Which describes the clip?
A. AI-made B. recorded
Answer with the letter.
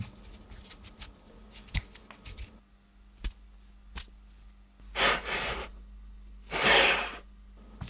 B